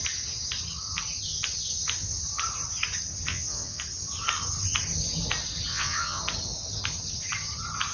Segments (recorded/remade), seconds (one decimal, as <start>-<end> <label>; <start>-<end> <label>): 0.0-3.3 recorded; 3.3-3.8 remade; 3.8-5.7 recorded; 5.7-6.2 remade; 6.2-7.9 recorded

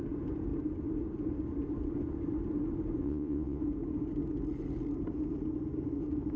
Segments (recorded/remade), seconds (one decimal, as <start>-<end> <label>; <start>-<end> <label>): 0.0-3.0 recorded; 3.0-3.6 remade; 3.6-6.4 recorded

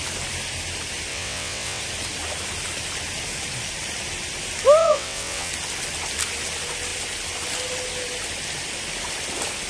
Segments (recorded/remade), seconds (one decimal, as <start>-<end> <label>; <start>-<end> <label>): 0.0-1.1 recorded; 1.1-1.8 remade; 1.8-4.8 recorded; 4.8-5.5 remade; 5.5-9.7 recorded

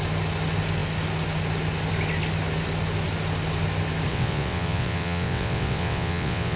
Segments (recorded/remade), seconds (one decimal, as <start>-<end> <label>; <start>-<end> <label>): 0.0-4.1 recorded; 4.1-6.6 remade